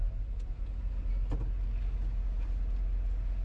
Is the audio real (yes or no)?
yes